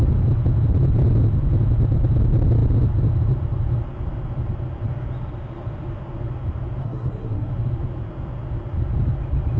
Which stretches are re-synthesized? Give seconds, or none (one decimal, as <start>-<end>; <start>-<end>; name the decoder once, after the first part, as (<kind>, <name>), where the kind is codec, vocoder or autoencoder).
6.8-7.5 (codec, SNAC)